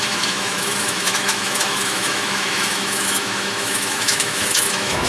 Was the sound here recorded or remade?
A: remade